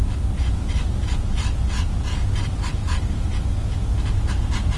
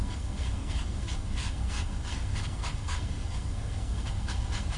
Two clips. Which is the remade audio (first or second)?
second